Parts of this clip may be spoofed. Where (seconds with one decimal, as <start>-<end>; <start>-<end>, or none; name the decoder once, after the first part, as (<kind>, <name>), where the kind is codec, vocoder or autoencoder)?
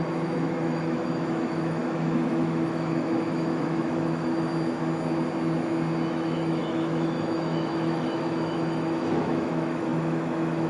0.0-4.5 (autoencoder, DAC-VAE); 6.1-10.7